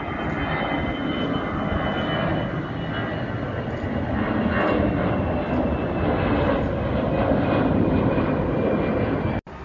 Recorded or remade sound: recorded